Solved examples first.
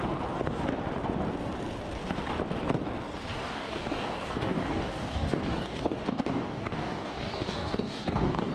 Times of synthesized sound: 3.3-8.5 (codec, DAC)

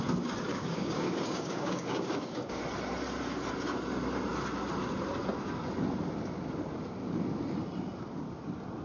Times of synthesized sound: 0.5-2.6 (codec, DAC)

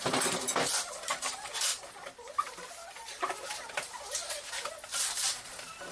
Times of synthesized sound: none

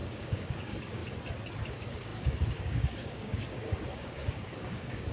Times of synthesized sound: 0.0-1.0 (codec, DAC); 1.7-5.1

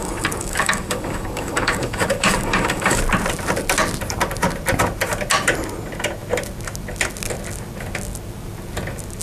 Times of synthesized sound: 0.0-3.0 (codec, DAC)

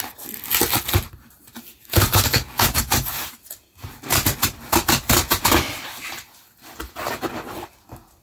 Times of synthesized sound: 1.8-2.8 (codec, DAC)

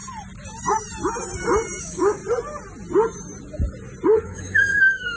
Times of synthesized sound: 1.8-2.2 (codec, DAC); 4.2-5.2

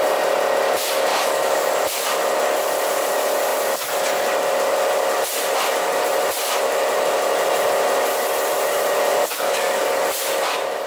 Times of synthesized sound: 1.1-1.7 (codec, DAC); 9.1-10.0